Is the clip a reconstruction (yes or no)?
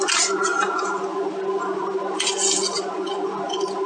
no